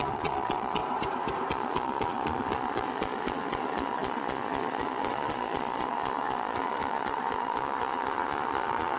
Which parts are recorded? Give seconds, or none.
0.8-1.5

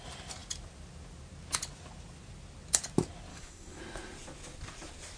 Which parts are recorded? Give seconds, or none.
0.0-3.3; 3.8-5.2

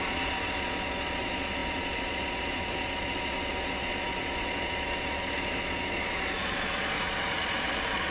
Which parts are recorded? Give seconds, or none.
none

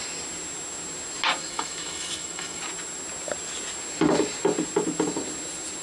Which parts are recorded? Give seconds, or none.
0.0-1.4; 2.6-5.8

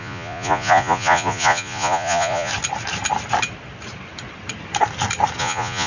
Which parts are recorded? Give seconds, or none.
2.5-5.4